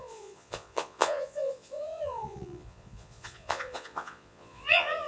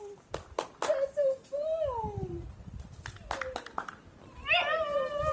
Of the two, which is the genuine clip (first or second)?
second